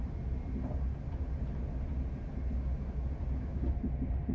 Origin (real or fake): real